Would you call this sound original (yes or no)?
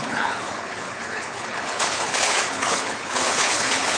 no